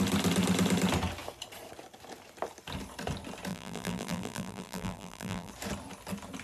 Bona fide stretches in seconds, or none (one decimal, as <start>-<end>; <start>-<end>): 0.0-3.5; 5.5-6.4